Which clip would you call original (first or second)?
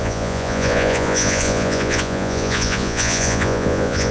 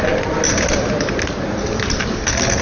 second